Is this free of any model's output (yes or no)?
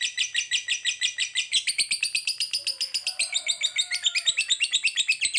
yes